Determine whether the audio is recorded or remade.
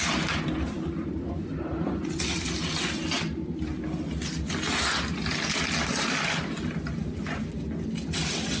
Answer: recorded